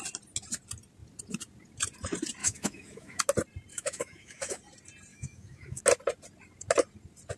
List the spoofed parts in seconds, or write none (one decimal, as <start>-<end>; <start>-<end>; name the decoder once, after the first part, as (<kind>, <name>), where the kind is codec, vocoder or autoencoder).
2.4-3.2 (autoencoder, DAC-VAE); 3.7-4.6; 5.1-5.8